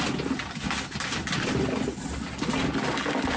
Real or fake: real